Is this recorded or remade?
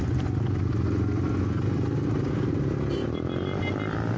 recorded